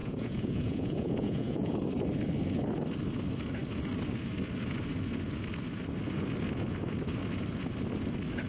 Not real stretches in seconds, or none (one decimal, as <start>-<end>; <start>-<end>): 0.0-1.7